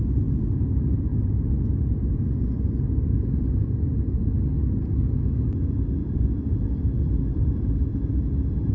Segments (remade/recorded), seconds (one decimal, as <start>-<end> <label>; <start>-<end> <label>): 0.0-6.0 recorded; 6.0-8.2 remade; 8.2-8.7 recorded